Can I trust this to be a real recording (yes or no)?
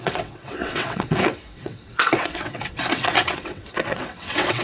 no